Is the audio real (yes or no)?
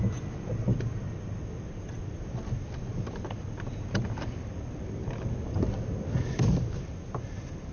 yes